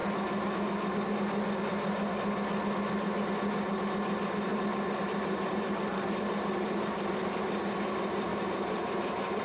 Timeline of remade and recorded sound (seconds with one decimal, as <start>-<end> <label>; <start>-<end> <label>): 0.0-4.5 recorded; 4.5-7.9 remade; 7.9-8.3 recorded; 8.3-9.0 remade; 9.0-9.4 recorded